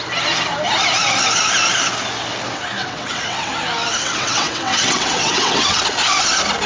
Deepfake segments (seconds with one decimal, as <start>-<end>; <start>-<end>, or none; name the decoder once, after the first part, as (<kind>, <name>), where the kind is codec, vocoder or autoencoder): 2.8-3.5 (vocoder, WaveNeXt); 4.0-5.8